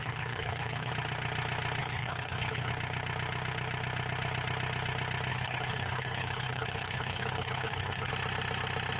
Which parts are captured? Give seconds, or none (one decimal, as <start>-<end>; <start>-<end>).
0.9-1.8; 2.7-5.3; 8.1-9.0

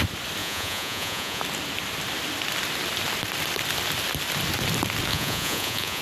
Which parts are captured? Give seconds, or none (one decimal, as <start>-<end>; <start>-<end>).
0.0-0.4; 1.4-5.1

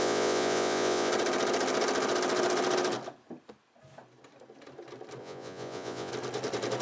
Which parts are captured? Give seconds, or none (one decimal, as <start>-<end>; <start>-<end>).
1.1-5.2; 6.1-6.8

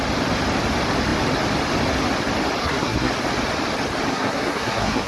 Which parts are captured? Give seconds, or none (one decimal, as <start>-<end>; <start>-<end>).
0.0-2.6; 3.1-4.1

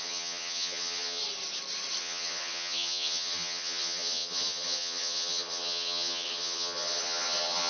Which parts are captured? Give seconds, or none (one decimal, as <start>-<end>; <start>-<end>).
1.2-2.0

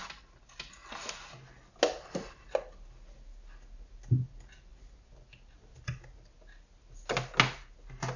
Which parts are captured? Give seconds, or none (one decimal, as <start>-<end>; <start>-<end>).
0.0-8.2

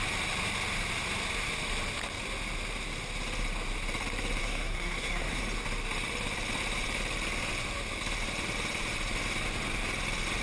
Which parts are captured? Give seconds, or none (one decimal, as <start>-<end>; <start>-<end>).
0.0-4.4; 5.4-10.4